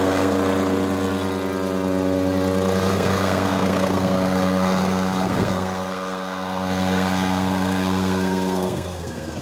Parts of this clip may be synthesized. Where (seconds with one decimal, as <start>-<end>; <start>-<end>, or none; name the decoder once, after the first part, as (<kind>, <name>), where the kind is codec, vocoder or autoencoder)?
0.0-0.4 (codec, SNAC); 2.9-9.4